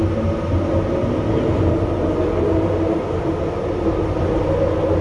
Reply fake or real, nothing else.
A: real